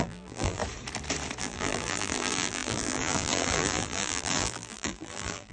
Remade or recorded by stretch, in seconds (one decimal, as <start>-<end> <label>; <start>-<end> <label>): 0.0-0.6 remade; 0.6-1.4 recorded; 1.4-5.5 remade